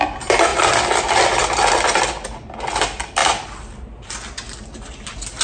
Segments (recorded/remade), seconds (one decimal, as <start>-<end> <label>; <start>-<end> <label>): 0.0-5.4 recorded